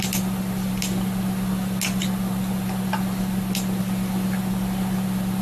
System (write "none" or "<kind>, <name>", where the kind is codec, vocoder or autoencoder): none